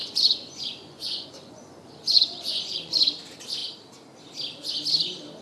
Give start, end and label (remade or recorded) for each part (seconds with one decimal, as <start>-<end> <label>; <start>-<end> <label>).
0.0-2.9 remade; 2.9-5.4 recorded